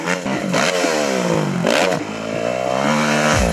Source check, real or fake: real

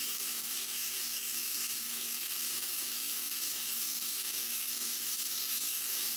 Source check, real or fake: fake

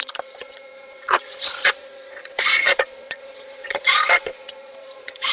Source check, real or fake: fake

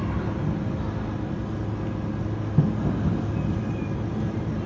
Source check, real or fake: real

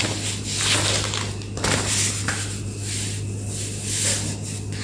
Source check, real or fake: real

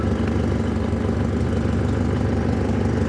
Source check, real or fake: real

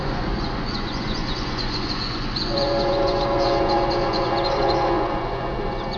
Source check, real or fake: fake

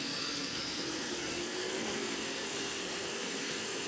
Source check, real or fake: fake